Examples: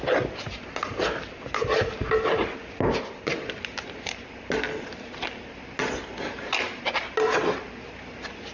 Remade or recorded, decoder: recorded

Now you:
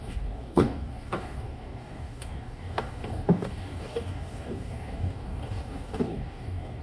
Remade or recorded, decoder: remade, codec, DAC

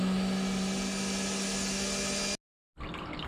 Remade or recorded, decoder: recorded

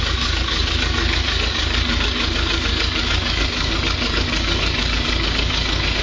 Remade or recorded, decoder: remade, codec, DAC